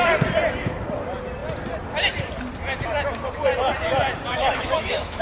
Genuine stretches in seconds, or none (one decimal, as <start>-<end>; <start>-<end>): 0.0-4.3